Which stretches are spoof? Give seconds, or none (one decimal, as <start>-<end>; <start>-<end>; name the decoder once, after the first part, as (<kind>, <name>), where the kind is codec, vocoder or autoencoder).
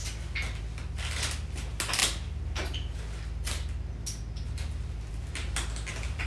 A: none